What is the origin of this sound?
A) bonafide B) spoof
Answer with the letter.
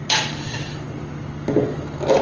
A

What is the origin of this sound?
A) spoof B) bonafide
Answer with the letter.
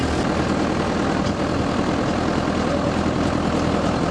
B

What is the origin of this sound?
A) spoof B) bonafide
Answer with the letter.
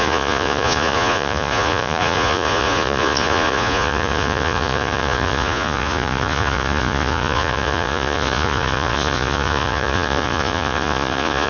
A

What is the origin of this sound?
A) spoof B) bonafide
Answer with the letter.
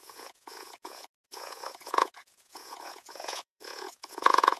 A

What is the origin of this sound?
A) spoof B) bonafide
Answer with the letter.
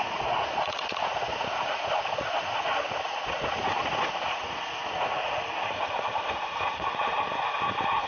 A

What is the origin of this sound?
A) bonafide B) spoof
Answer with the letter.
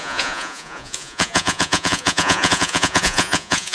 B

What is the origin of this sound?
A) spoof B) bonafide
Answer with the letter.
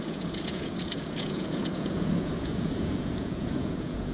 A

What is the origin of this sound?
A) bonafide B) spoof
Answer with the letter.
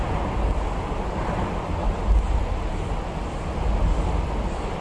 A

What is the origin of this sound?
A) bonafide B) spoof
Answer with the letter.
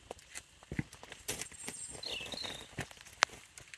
A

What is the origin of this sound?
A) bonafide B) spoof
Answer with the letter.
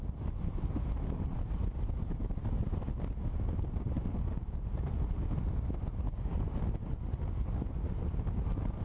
A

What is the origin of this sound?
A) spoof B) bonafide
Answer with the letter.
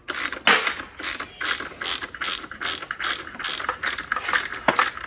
B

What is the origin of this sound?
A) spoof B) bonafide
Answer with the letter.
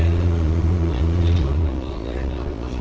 A